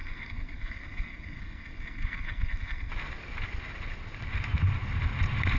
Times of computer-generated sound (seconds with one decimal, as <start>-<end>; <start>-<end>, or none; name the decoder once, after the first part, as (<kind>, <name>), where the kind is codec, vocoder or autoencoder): 0.0-2.9 (codec, SNAC)